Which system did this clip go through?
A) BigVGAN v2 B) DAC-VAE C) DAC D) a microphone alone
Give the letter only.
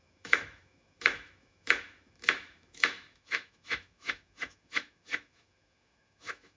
B